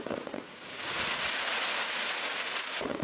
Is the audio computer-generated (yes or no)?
yes